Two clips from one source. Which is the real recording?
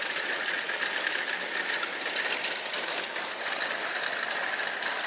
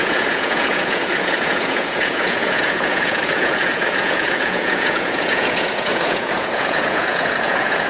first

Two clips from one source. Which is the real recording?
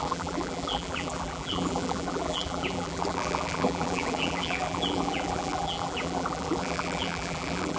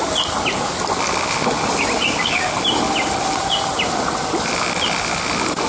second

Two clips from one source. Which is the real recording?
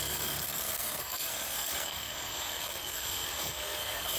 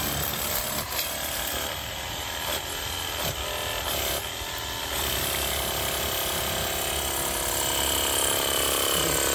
second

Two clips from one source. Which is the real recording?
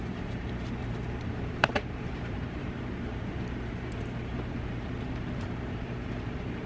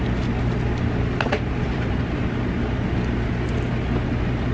second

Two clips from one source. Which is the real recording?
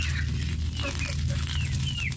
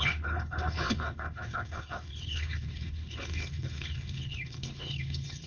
first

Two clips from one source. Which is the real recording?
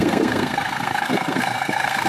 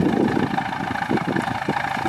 second